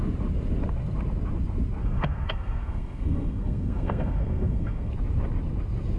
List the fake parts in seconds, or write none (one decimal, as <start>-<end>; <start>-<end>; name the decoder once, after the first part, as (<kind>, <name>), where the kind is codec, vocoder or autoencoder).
1.8-4.9 (codec, SNAC)